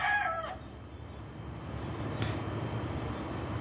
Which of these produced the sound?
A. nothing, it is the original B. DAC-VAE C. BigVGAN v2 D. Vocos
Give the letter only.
A